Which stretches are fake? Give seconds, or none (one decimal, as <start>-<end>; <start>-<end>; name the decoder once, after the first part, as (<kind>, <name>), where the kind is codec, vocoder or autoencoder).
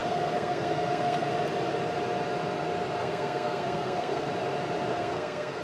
0.0-1.3 (codec, SNAC); 3.0-4.3; 4.9-5.6